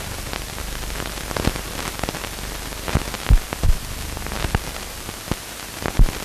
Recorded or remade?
recorded